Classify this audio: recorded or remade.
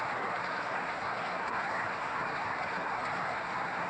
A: remade